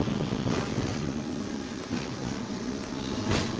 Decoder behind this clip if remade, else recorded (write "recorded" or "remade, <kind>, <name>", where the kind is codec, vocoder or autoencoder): remade, vocoder, WaveNeXt